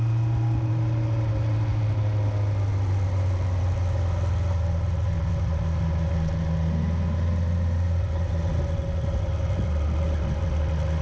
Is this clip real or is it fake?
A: real